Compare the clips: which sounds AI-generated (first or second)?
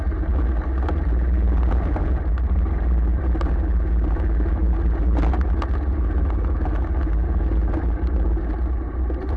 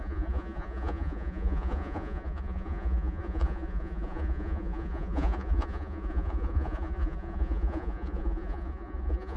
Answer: second